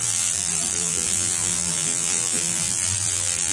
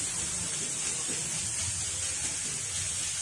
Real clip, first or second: second